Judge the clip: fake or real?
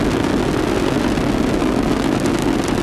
real